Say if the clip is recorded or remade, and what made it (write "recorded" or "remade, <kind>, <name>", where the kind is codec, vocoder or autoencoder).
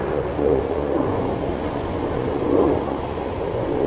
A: remade, vocoder, Vocos